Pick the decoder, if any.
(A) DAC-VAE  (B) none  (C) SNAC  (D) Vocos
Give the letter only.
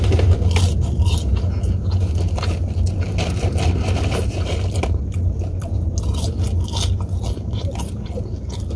B